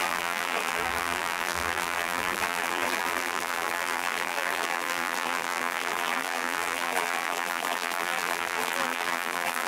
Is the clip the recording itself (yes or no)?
no